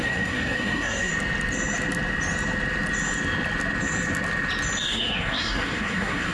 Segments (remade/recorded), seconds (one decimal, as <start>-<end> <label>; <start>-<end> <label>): 0.0-1.1 remade; 1.1-4.8 recorded; 4.8-6.3 remade